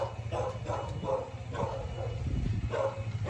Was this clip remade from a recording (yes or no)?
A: no